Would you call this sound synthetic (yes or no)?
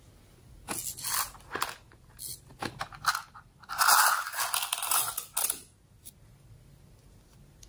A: no